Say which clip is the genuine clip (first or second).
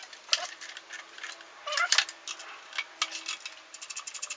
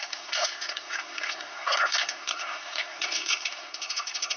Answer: first